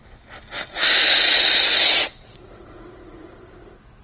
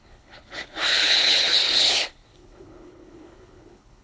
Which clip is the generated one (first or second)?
second